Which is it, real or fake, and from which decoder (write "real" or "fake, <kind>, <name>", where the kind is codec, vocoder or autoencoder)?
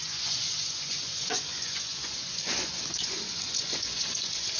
fake, vocoder, Vocos